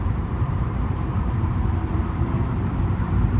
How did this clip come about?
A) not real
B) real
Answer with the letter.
A